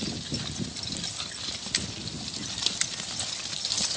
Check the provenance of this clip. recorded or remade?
recorded